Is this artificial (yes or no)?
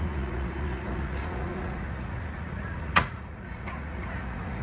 yes